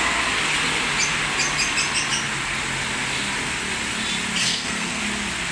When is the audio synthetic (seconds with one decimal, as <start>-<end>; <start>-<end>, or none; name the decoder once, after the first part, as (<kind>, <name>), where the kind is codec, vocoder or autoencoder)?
4.4-5.0 (codec, SNAC)